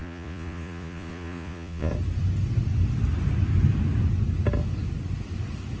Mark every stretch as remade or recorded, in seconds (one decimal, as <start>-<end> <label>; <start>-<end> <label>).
0.0-1.9 remade; 1.9-5.8 recorded